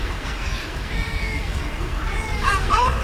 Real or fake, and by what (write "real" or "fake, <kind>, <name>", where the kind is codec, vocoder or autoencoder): fake, codec, SNAC